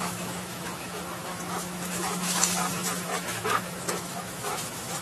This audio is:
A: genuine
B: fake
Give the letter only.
B